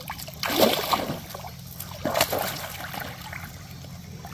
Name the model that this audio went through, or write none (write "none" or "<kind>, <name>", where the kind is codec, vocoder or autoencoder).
none